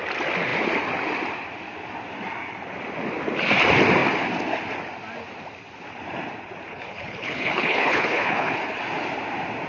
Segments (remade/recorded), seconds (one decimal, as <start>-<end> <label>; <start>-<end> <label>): 0.0-6.7 recorded; 6.7-8.6 remade; 8.6-9.7 recorded